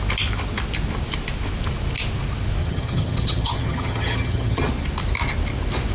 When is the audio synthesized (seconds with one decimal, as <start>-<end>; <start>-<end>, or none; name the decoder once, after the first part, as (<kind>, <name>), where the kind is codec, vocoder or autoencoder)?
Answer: 2.6-4.7 (vocoder, HiFi-GAN)